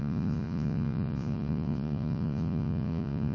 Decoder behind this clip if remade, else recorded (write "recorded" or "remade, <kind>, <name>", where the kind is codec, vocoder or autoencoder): remade, vocoder, Vocos